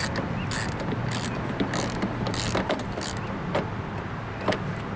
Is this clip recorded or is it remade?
recorded